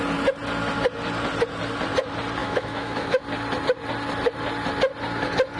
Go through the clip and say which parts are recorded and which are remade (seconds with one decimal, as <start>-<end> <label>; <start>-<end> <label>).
0.0-2.4 recorded; 2.4-3.2 remade; 3.2-5.6 recorded